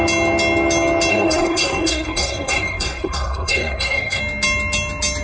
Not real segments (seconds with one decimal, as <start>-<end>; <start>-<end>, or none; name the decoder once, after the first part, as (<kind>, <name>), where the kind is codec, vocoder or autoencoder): 1.1-4.2 (codec, SNAC)